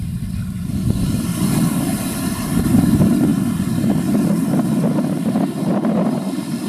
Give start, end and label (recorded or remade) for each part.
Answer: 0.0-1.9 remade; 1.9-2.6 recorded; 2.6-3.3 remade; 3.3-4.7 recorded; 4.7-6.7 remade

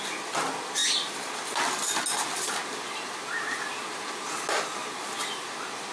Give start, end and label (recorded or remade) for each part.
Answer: 0.0-5.9 recorded

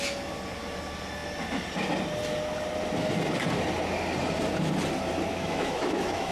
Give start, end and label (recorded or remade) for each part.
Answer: 0.0-5.3 recorded; 5.3-6.3 remade